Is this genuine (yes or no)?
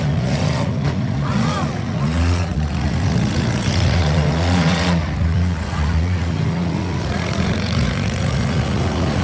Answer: no